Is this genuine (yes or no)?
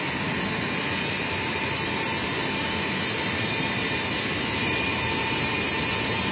yes